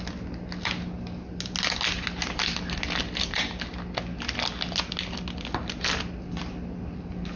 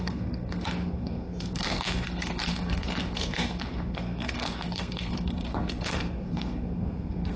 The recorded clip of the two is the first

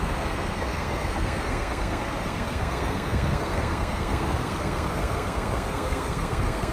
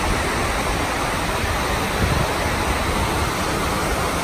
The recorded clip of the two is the second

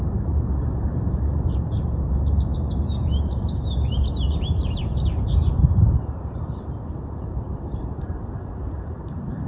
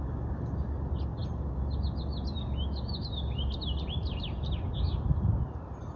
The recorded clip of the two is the second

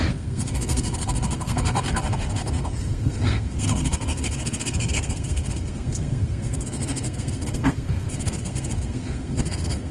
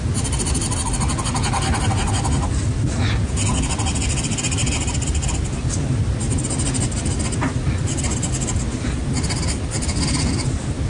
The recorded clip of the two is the second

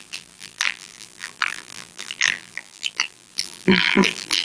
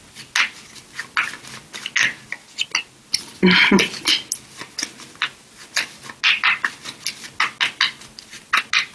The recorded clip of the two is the second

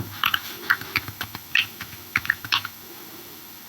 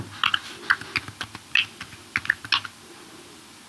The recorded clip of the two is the second